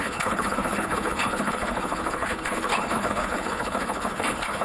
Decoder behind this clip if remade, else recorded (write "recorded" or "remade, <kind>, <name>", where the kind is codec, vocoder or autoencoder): remade, codec, HILCodec